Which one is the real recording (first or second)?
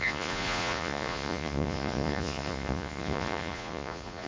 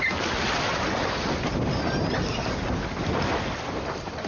second